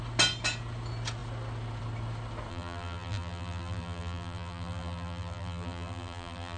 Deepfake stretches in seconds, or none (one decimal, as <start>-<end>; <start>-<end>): 2.5-6.6